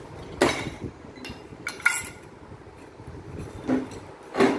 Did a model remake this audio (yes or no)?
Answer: no